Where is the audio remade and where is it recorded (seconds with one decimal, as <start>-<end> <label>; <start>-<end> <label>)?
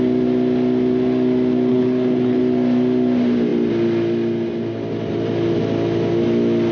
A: 0.0-1.7 recorded; 1.7-2.4 remade; 2.4-6.7 recorded